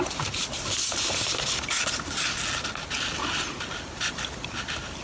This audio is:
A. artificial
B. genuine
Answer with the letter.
B